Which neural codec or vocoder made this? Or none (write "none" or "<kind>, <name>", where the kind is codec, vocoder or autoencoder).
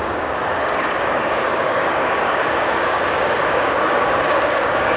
codec, DAC